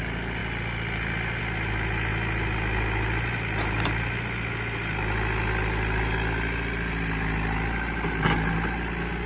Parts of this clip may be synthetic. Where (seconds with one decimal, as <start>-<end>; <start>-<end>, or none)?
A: none